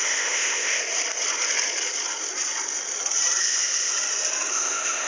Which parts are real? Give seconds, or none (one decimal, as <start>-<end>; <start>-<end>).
0.8-3.4; 3.9-4.5